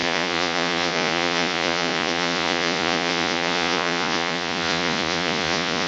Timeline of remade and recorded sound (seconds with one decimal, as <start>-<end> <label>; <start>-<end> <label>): 0.0-5.9 remade